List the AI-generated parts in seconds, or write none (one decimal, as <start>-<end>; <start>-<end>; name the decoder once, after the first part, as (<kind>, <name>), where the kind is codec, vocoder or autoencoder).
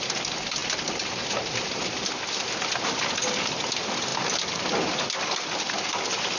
none